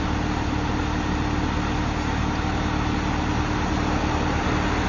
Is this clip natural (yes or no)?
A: yes